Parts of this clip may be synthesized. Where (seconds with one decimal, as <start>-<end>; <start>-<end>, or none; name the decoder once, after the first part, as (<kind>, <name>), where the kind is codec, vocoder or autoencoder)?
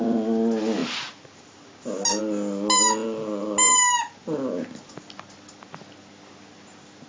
none